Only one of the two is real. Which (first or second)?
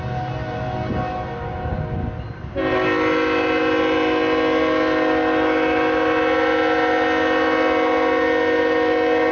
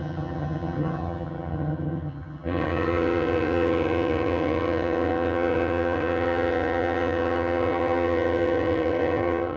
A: first